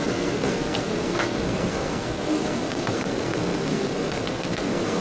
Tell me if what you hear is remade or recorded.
remade